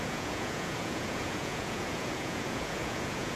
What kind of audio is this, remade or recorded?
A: remade